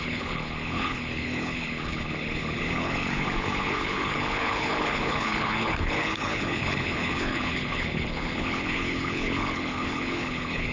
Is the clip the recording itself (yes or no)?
no